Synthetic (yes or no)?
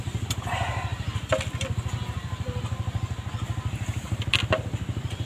no